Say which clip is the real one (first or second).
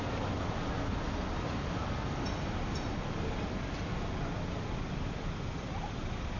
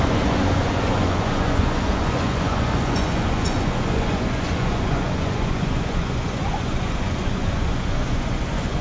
first